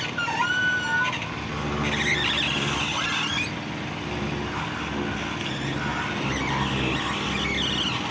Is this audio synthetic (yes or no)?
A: no